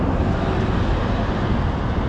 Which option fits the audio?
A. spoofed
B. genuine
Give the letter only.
B